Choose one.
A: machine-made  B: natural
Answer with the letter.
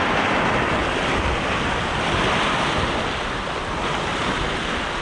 B